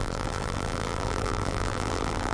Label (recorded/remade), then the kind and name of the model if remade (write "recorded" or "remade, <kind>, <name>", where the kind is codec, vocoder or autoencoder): remade, vocoder, BigVGAN v2